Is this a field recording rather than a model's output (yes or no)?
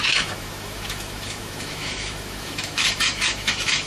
no